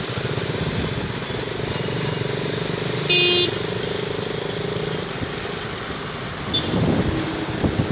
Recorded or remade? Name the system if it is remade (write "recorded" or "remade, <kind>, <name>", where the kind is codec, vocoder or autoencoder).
recorded